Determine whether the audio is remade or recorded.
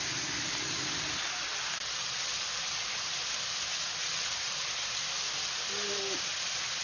recorded